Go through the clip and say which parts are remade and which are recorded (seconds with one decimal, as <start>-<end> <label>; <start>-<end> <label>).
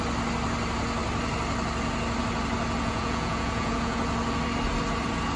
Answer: 0.0-2.8 recorded; 2.8-4.0 remade; 4.0-5.4 recorded